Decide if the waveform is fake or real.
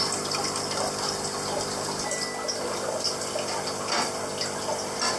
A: real